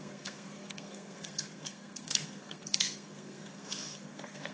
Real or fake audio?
fake